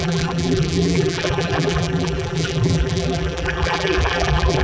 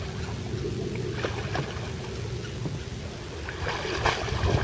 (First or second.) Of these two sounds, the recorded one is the second